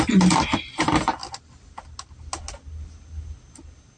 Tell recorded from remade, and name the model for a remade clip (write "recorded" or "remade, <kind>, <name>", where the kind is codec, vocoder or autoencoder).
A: recorded